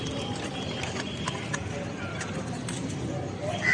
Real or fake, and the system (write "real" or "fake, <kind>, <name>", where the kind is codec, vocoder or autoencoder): real